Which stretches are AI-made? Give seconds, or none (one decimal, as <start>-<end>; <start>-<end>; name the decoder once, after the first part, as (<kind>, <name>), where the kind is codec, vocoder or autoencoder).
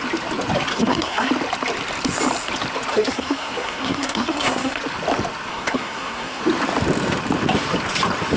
0.7-1.3 (codec, SNAC); 2.9-4.8; 5.5-6.4